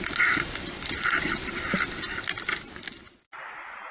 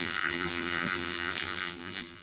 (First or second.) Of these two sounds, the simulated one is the second